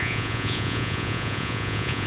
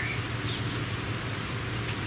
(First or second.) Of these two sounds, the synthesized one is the first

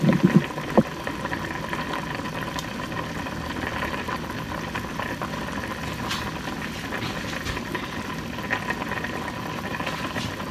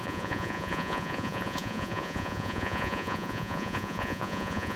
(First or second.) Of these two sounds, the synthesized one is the second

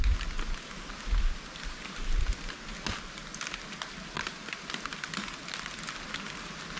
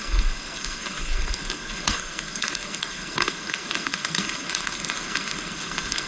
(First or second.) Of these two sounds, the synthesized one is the second